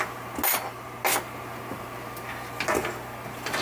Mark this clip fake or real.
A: real